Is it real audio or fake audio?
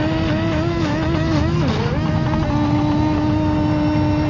real